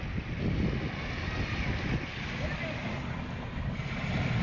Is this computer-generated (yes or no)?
no